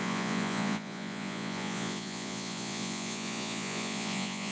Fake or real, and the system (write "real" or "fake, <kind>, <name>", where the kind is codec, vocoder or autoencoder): fake, vocoder, Vocos